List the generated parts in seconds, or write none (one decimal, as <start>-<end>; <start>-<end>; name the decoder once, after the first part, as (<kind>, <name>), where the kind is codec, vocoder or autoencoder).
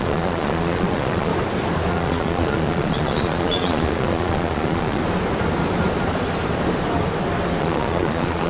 0.0-1.3 (vocoder, Vocos); 1.9-5.0; 7.6-8.5